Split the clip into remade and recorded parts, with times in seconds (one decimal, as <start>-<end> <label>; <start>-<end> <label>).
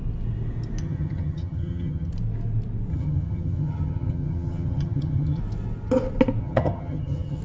0.0-0.8 recorded; 0.8-2.1 remade; 2.1-2.9 recorded; 2.9-5.4 remade; 5.4-6.4 recorded; 6.4-7.4 remade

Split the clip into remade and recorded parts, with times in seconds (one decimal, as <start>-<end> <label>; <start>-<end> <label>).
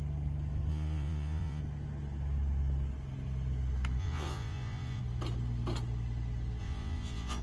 0.0-0.7 recorded; 0.7-1.6 remade; 1.6-4.0 recorded; 4.0-5.0 remade; 5.0-6.6 recorded; 6.6-7.4 remade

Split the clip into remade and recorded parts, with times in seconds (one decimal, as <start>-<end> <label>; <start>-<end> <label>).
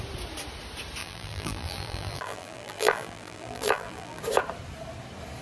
0.0-1.0 recorded; 1.0-4.2 remade; 4.2-5.4 recorded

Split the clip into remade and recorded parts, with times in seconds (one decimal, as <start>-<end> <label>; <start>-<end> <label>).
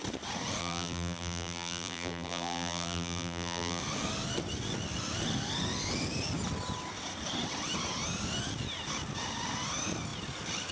0.0-0.6 recorded; 0.6-3.8 remade; 3.8-10.7 recorded